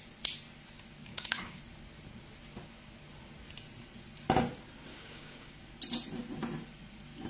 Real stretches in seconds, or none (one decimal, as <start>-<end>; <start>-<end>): 0.0-1.1; 1.6-4.9; 5.6-7.3